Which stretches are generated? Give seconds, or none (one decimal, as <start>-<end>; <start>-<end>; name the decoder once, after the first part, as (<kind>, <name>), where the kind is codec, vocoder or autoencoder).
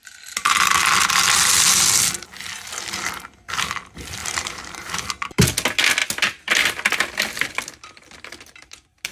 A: 4.2-5.0 (vocoder, BigVGAN v2)